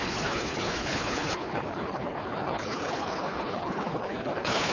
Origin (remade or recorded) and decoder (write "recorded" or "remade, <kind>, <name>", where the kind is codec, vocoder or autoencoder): remade, codec, HILCodec